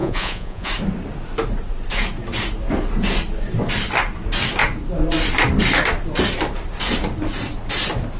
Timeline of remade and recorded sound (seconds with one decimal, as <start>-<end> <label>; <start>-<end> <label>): 0.0-0.7 remade; 0.7-8.2 recorded